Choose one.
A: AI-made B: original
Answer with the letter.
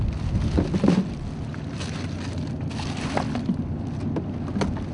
B